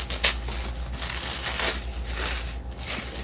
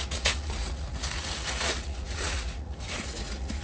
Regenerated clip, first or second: second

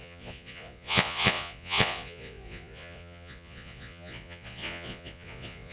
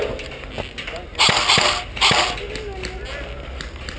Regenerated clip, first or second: first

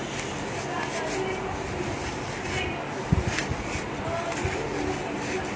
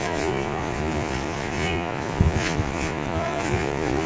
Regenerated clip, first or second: second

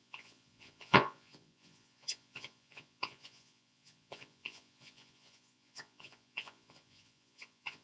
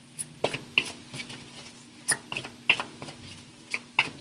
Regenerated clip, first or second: first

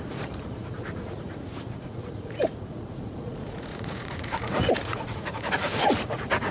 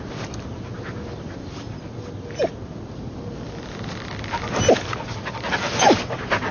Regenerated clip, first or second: first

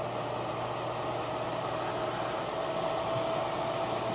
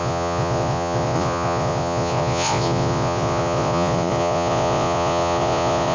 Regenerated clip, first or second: second